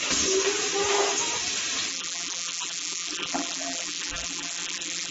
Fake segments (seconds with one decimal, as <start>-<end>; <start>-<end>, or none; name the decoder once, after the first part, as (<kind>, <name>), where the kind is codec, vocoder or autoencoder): 1.9-5.1 (vocoder, BigVGAN v2)